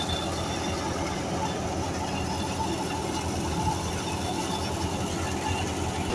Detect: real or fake real